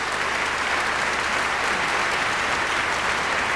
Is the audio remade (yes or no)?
no